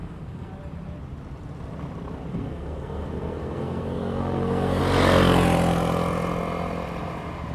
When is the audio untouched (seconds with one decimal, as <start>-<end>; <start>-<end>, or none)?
0.5-2.3; 4.8-7.5